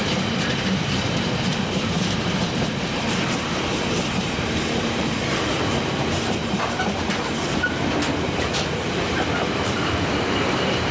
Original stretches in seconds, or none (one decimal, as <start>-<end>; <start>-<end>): none